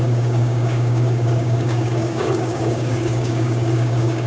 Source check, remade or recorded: remade